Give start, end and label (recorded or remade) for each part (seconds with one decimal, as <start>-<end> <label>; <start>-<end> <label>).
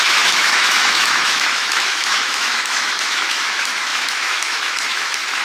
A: 0.0-5.4 remade